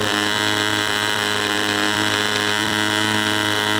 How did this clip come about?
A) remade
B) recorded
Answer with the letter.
A